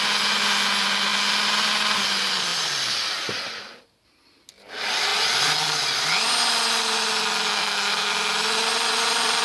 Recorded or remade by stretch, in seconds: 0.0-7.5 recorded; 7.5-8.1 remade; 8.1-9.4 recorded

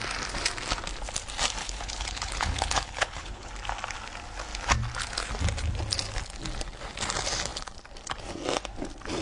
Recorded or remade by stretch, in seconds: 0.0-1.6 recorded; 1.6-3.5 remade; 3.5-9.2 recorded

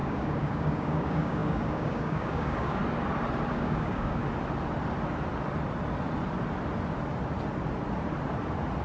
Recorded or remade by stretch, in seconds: 0.0-2.8 remade; 2.8-3.5 recorded; 3.5-4.2 remade; 4.2-8.8 recorded

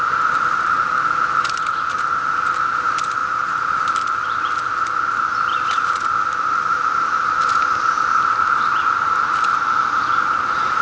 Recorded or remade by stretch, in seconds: 0.0-3.2 recorded; 3.2-3.8 remade; 3.8-10.8 recorded